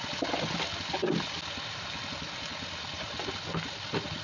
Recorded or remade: recorded